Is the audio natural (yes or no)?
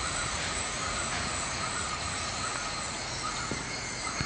no